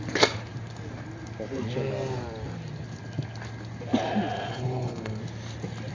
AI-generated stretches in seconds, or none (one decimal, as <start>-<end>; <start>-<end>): 4.5-5.2